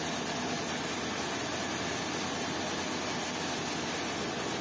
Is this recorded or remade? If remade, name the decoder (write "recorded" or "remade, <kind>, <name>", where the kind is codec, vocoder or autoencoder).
recorded